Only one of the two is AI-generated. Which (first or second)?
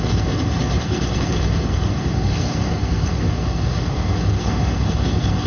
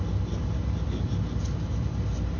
first